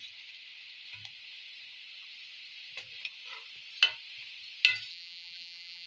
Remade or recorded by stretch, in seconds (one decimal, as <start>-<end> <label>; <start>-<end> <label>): 0.0-4.9 recorded; 4.9-5.9 remade